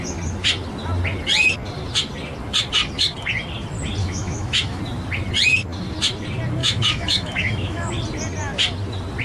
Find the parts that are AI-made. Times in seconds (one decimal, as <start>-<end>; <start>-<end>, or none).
4.0-4.8; 6.6-7.9